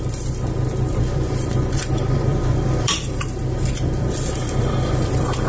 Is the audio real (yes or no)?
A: no